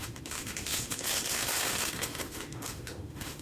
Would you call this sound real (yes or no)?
no